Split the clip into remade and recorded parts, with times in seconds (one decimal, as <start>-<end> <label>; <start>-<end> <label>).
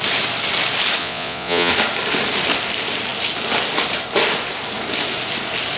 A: 0.0-1.0 recorded; 1.0-1.7 remade; 1.7-5.8 recorded